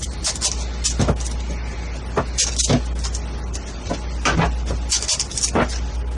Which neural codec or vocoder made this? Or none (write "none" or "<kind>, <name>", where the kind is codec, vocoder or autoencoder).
none